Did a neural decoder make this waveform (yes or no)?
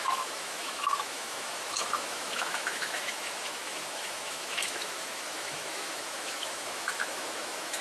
yes